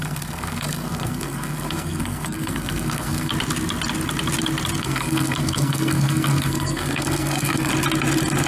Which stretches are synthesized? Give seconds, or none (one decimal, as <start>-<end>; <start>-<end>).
0.0-3.3; 4.8-7.7

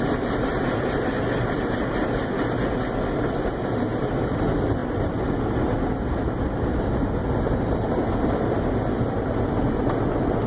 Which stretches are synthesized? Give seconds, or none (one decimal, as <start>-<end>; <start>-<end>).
none

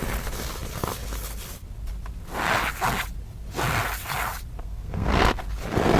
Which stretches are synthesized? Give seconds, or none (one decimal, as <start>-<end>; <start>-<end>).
4.6-5.1

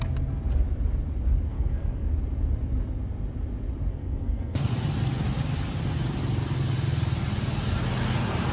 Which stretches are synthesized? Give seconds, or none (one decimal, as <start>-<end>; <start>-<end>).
1.5-2.1; 3.9-4.7